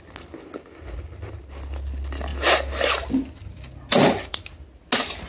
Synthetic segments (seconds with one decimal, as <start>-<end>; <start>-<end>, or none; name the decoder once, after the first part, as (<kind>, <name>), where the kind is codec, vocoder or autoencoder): none